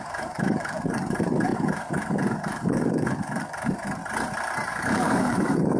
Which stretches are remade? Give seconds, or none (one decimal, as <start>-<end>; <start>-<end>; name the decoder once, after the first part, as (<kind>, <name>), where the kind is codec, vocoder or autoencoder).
0.0-4.0 (codec, DAC); 4.7-5.8